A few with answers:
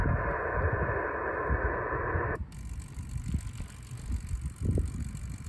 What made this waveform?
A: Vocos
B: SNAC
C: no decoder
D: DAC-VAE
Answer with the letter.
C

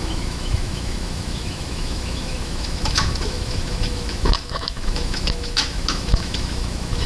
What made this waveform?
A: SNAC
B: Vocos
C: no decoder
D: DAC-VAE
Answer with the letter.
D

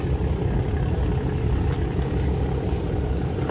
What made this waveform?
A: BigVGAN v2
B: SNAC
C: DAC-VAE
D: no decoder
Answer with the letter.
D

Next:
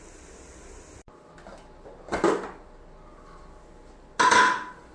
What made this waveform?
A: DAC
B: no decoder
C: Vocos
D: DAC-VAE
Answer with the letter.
B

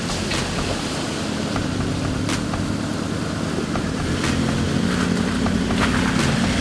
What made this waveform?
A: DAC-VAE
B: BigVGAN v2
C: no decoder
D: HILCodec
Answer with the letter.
C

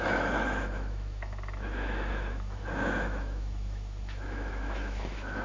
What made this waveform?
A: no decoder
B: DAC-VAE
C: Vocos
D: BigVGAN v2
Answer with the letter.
B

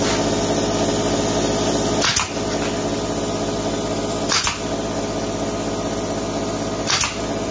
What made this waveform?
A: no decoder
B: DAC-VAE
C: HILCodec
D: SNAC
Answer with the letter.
A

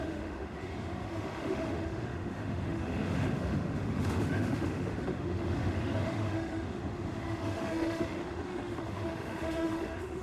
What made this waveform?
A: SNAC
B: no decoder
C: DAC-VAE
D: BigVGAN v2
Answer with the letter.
C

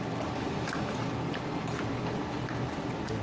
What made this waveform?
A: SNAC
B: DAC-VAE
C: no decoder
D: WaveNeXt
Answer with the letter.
C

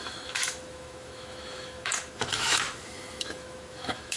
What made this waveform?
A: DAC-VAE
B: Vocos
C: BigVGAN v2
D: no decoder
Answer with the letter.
A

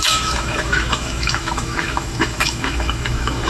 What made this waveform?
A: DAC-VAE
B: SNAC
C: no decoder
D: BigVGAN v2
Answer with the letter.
A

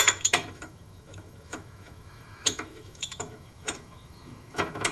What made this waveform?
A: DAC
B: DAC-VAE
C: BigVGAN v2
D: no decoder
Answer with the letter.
B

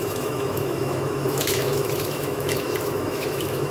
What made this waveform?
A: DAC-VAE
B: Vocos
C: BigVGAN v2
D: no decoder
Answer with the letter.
A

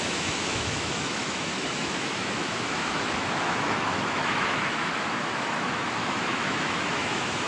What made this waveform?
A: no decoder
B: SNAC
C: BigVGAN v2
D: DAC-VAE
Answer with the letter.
D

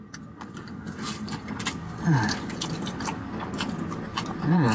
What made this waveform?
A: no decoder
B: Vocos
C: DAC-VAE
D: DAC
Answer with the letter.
A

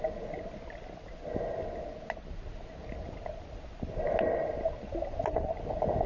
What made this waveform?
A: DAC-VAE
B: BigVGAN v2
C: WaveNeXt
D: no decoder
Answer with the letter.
D